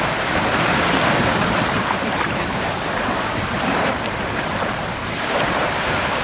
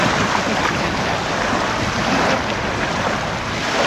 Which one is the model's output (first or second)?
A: first